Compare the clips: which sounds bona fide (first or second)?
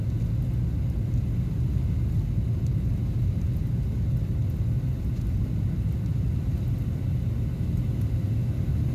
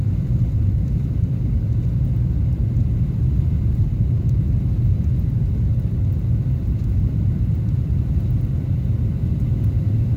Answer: first